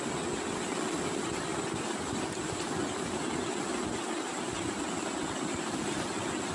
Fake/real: real